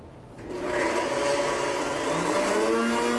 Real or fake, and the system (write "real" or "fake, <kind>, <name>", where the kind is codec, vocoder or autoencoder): real